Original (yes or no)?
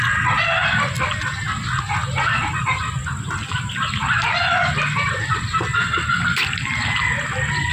yes